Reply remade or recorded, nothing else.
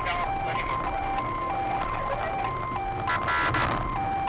recorded